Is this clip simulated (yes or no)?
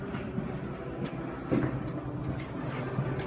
no